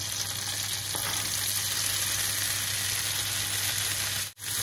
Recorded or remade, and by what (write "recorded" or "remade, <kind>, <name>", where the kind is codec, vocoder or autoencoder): recorded